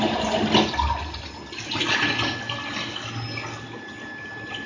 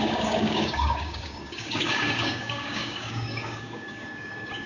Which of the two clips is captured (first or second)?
first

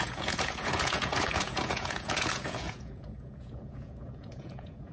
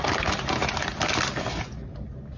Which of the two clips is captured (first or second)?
second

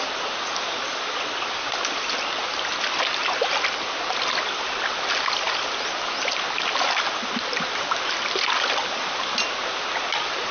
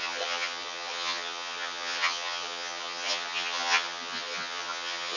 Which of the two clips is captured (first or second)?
first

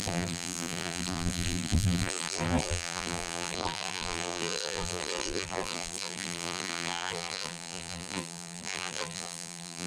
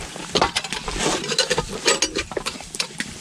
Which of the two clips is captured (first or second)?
second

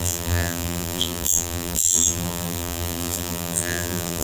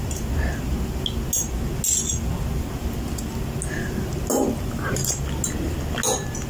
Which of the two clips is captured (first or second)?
second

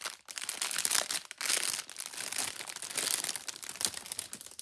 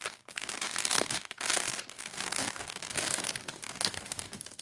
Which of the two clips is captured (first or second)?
first